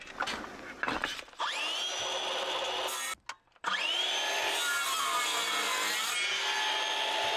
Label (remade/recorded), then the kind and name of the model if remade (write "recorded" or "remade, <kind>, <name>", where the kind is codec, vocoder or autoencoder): recorded